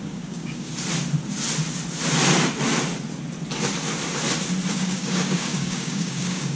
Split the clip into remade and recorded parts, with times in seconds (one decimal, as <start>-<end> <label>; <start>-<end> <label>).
0.0-0.7 remade; 0.7-4.7 recorded; 4.7-6.6 remade